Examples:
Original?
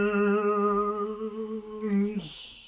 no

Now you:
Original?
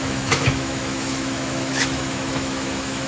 no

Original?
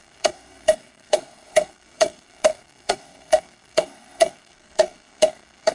no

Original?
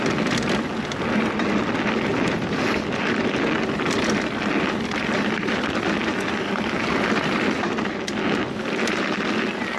yes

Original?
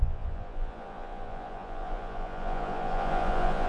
no